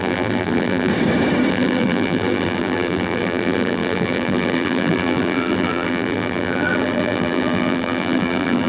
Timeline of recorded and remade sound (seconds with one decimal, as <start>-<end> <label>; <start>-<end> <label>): 0.0-0.9 remade; 0.9-1.5 recorded; 1.5-8.7 remade